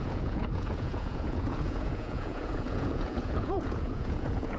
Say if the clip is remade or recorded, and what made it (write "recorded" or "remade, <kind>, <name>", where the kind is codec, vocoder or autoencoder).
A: remade, vocoder, Vocos